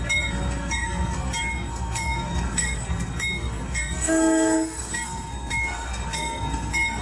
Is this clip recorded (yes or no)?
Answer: no